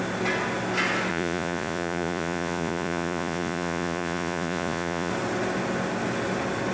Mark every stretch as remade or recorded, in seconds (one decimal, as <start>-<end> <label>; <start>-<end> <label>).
0.0-1.1 recorded; 1.1-5.1 remade; 5.1-6.7 recorded